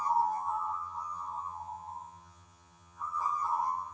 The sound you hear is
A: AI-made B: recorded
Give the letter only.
A